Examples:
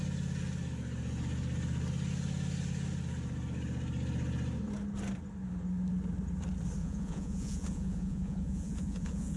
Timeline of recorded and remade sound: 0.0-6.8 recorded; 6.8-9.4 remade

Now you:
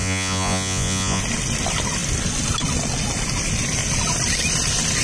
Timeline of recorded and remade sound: 0.0-1.2 remade; 1.2-5.0 recorded

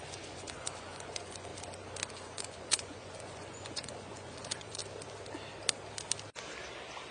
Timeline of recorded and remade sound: 0.0-1.5 remade; 1.5-2.1 recorded; 2.1-4.8 remade; 4.8-7.1 recorded

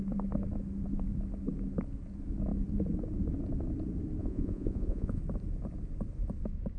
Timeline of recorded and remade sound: 0.0-4.2 recorded; 4.2-5.2 remade; 5.2-6.8 recorded

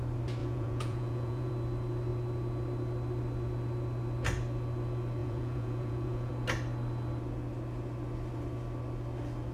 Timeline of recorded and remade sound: 0.0-0.4 recorded; 0.4-1.5 remade; 1.5-5.2 recorded; 5.2-6.3 remade; 6.3-9.5 recorded

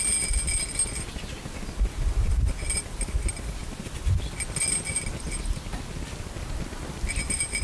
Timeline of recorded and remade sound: 0.0-7.6 recorded

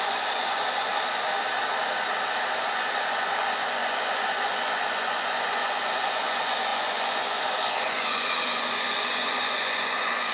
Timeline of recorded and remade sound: 0.0-0.9 remade; 0.9-2.6 recorded; 2.6-10.3 remade

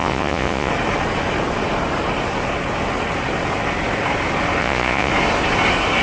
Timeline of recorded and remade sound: 0.0-0.7 remade; 0.7-4.6 recorded; 4.6-5.1 remade; 5.1-6.0 recorded